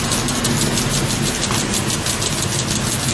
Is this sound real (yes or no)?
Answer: yes